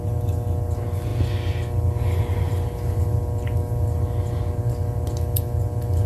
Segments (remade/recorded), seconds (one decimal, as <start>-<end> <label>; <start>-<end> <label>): 0.0-6.1 recorded